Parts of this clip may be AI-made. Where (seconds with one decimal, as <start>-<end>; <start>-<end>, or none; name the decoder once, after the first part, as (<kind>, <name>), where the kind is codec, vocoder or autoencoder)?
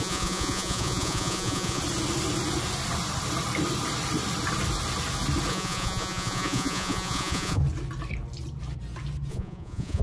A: 0.0-1.8 (vocoder, Vocos); 5.5-7.6; 9.3-10.0